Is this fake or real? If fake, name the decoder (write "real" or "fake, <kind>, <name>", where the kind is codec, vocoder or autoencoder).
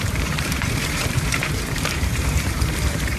fake, vocoder, BigVGAN v2